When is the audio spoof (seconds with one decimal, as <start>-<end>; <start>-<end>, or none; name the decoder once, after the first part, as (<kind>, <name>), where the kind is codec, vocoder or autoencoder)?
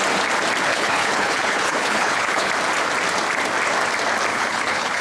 0.7-2.5 (codec, HILCodec); 4.3-5.0